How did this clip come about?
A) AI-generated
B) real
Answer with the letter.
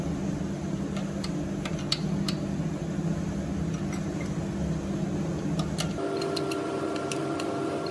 B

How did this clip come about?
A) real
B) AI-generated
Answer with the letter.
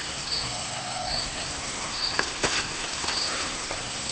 B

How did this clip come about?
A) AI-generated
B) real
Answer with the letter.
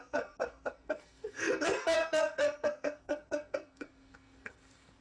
A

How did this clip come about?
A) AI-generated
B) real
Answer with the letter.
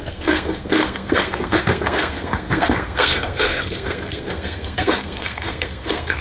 A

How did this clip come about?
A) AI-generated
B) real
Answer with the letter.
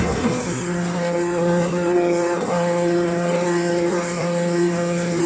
A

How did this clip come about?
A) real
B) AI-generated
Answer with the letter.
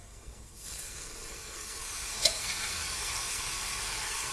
B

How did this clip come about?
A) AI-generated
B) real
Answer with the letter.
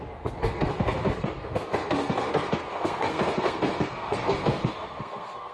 A